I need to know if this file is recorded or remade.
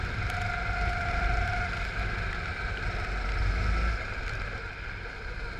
recorded